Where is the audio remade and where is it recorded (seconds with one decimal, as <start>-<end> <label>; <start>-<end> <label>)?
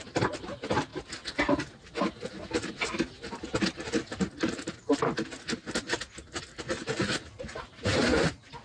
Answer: 0.0-8.6 recorded